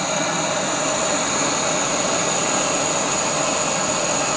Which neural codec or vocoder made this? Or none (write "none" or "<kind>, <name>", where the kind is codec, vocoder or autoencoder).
none